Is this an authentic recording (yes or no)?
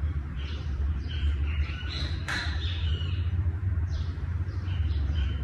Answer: no